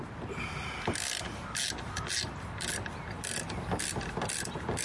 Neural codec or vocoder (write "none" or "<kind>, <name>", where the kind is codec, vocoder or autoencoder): none